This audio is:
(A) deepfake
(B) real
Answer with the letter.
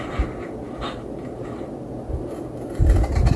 A